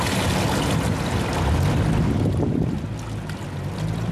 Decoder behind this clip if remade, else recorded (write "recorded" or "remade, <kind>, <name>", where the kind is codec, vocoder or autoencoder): recorded